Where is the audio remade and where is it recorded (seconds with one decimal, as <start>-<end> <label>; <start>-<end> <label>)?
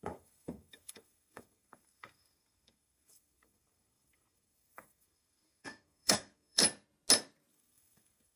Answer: 0.0-6.6 remade; 6.6-7.5 recorded; 7.5-8.4 remade